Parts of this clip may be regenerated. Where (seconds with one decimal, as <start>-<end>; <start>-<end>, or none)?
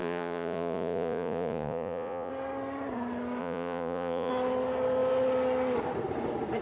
0.0-2.3; 3.4-4.3